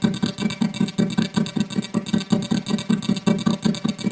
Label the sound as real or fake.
real